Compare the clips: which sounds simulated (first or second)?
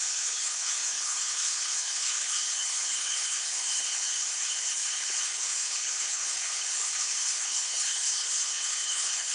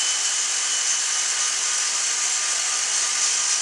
first